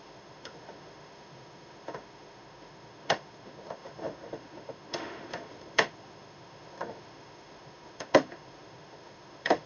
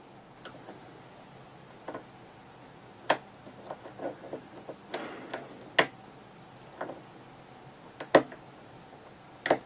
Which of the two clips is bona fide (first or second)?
second